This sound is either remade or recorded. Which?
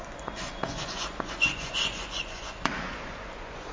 remade